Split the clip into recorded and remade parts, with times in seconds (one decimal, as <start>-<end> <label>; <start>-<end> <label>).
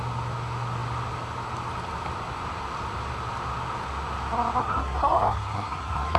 0.0-4.6 recorded; 4.6-6.2 remade